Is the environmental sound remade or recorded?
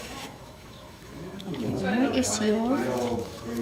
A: remade